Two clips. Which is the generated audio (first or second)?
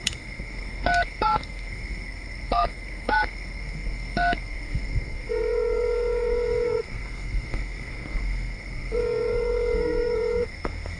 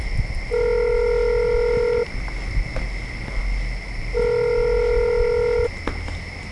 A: first